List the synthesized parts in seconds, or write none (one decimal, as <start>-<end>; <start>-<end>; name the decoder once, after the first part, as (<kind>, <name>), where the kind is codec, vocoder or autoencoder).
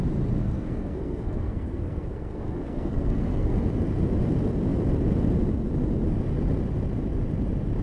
0.4-3.6 (codec, SNAC)